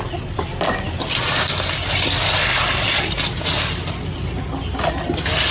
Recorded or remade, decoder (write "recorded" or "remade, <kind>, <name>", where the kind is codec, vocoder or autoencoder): recorded